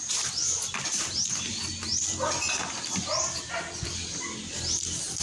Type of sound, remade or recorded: recorded